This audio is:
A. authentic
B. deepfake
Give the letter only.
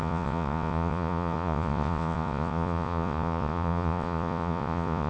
B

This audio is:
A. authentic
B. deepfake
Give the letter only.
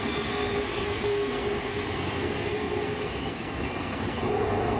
B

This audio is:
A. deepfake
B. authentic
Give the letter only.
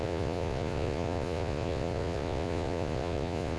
A